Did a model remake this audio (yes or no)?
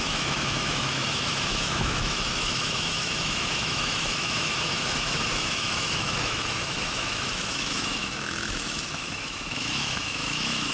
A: yes